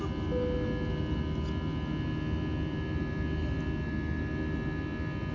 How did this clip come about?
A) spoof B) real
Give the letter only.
B